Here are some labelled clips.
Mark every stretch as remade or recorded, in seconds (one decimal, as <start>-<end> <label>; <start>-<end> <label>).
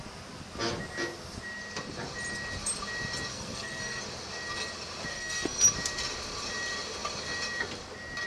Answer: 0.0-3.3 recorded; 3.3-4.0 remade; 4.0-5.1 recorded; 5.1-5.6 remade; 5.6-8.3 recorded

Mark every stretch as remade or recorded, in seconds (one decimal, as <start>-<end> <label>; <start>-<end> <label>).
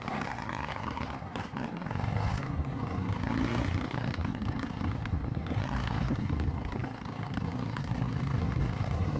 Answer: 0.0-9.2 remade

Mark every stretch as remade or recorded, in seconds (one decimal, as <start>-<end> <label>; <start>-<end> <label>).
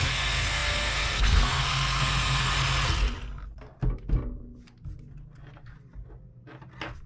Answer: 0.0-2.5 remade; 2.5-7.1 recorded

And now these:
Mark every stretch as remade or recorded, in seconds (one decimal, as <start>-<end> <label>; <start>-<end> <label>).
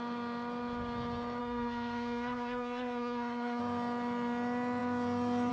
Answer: 0.0-1.4 recorded; 1.4-3.6 remade; 3.6-5.5 recorded